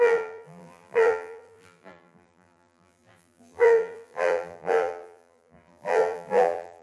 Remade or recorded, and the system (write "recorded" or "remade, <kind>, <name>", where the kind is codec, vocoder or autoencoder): remade, vocoder, BigVGAN v2